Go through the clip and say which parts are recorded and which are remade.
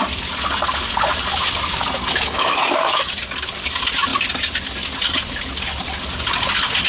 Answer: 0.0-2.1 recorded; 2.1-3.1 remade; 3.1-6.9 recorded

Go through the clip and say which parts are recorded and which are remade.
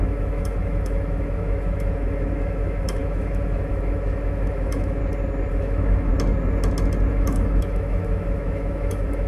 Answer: 0.0-5.0 remade; 5.0-5.5 recorded; 5.5-6.1 remade; 6.1-7.1 recorded; 7.1-9.3 remade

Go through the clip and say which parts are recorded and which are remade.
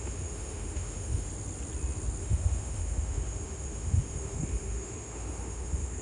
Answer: 0.0-1.3 remade; 1.3-2.2 recorded; 2.2-6.0 remade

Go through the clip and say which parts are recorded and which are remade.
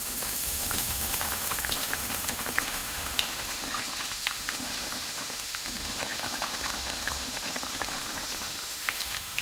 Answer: 0.0-9.4 remade